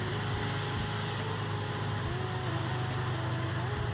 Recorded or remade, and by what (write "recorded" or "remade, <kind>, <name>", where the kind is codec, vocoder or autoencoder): recorded